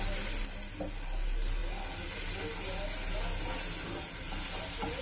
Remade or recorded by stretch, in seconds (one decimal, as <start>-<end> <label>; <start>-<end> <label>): 0.0-5.0 recorded